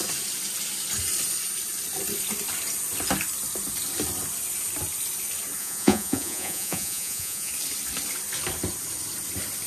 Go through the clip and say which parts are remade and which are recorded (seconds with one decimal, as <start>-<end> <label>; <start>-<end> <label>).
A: 0.0-5.6 recorded; 5.6-7.5 remade; 7.5-9.7 recorded